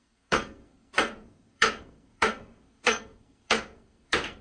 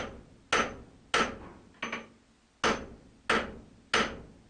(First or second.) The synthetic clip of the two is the first